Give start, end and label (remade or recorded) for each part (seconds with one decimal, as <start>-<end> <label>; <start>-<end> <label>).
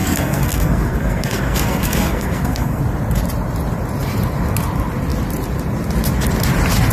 0.0-2.8 remade; 2.8-6.9 recorded